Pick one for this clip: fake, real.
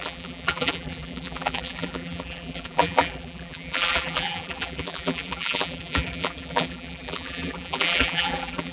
fake